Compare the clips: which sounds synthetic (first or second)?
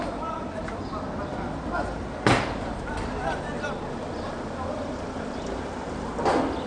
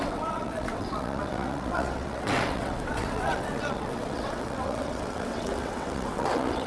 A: second